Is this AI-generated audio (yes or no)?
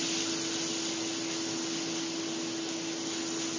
no